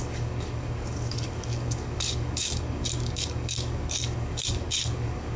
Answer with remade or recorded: remade